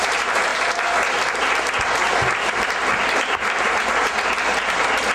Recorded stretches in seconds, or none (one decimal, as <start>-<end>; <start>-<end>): 0.5-3.6